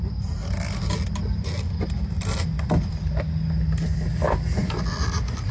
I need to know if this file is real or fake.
real